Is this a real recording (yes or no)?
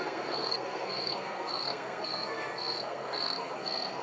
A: no